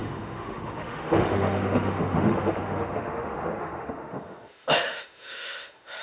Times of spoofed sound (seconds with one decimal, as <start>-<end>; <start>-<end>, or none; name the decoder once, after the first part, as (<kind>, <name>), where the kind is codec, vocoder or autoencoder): 0.0-6.0 (autoencoder, DAC-VAE)